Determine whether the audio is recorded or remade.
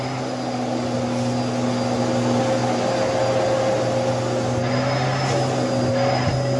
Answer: recorded